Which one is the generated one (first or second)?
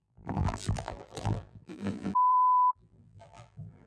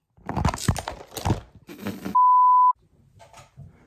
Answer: first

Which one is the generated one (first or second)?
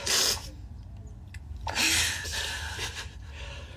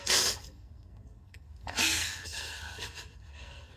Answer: second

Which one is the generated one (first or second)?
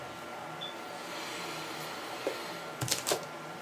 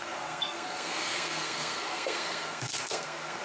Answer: second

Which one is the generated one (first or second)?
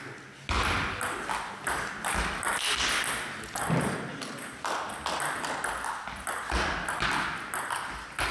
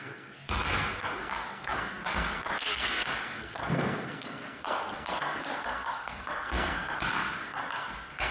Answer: second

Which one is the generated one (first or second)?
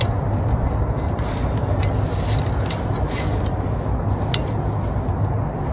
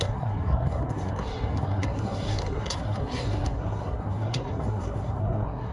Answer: second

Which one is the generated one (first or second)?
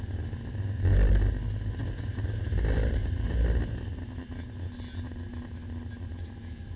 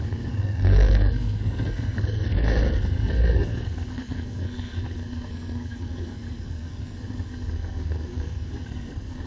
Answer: second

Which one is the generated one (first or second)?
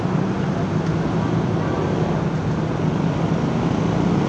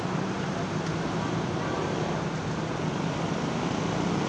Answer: second